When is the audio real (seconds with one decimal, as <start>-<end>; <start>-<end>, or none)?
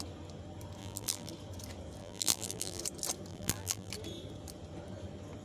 0.0-0.8; 1.3-2.0; 2.8-3.3; 3.9-5.4